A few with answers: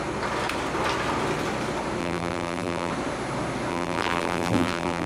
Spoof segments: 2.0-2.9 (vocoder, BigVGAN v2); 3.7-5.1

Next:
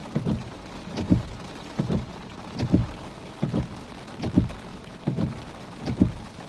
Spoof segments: 4.7-5.5 (vocoder, BigVGAN v2)